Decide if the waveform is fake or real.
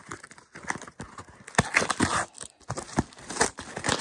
real